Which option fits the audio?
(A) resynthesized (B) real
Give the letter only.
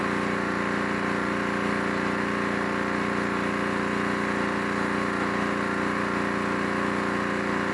B